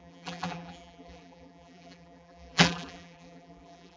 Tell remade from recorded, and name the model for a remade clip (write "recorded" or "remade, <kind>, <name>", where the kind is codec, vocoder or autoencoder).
remade, vocoder, BigVGAN v2